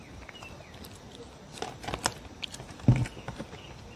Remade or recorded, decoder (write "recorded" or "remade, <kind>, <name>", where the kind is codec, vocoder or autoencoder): recorded